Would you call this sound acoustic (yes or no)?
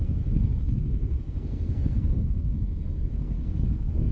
no